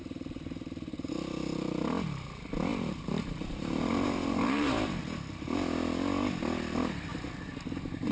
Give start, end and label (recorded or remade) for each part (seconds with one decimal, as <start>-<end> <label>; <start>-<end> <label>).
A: 0.0-1.1 remade; 1.1-2.7 recorded; 2.7-5.0 remade; 5.0-7.1 recorded; 7.1-8.1 remade